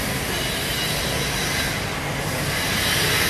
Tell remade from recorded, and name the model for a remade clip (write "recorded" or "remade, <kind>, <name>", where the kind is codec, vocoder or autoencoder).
recorded